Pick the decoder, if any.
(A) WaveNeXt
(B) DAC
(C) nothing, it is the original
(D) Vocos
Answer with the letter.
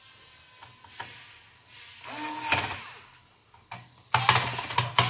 C